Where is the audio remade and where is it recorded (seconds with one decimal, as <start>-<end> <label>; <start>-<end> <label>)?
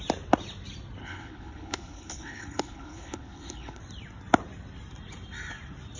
0.0-1.0 recorded; 1.0-3.8 remade; 3.8-6.0 recorded